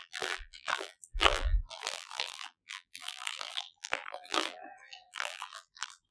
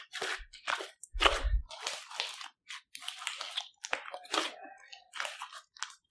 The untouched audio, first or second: second